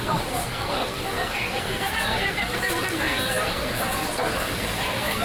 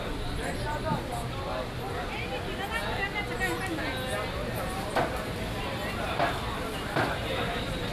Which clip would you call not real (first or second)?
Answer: first